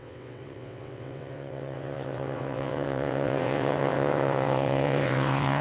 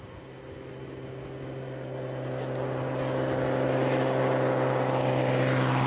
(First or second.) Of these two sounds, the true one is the second